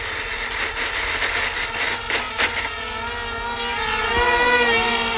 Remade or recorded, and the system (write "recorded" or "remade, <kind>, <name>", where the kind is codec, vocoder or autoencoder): recorded